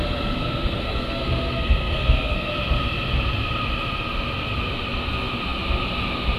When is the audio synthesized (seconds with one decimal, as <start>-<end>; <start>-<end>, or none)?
0.4-2.5